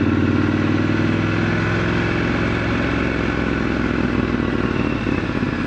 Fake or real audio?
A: real